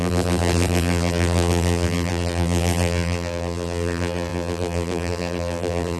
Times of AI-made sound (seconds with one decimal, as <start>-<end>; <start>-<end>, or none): 0.0-6.0